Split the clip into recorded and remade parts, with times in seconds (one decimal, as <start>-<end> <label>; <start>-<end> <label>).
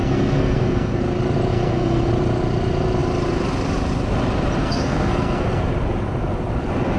0.0-1.0 remade; 1.0-1.5 recorded; 1.5-2.1 remade; 2.1-4.6 recorded; 4.6-5.6 remade; 5.6-7.0 recorded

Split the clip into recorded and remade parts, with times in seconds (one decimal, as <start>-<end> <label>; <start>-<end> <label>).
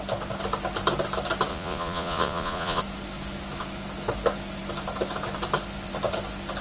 0.0-1.5 recorded; 1.5-2.8 remade; 2.8-6.6 recorded